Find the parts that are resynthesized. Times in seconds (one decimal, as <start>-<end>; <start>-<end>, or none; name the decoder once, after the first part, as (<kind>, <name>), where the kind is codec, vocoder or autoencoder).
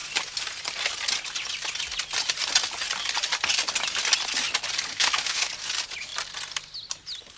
4.9-5.5 (autoencoder, DAC-VAE)